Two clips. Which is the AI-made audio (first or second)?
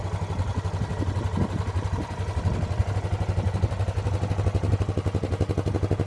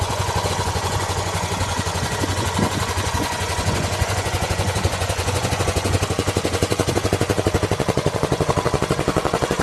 second